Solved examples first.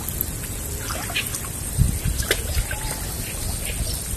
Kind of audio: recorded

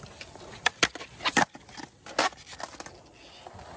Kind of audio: recorded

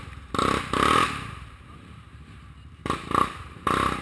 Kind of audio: remade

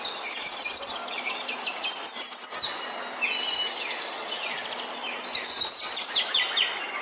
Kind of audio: recorded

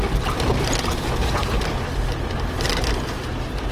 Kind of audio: recorded